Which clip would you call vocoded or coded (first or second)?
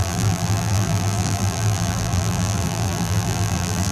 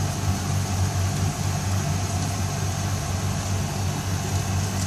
first